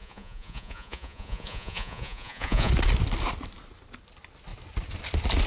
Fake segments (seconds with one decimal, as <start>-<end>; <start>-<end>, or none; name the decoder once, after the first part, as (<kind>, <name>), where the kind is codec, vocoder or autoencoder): 0.0-2.7 (vocoder, Vocos)